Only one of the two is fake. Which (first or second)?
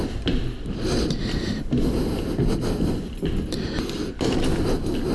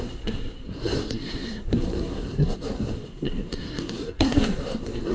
second